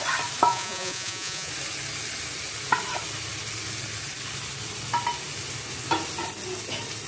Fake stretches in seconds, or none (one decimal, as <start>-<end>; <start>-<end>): 0.5-1.5